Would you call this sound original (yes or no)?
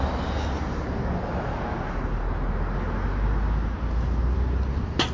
yes